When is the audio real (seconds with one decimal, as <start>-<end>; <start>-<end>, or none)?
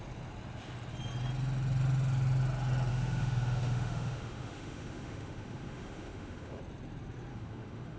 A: 0.0-2.9; 6.6-7.3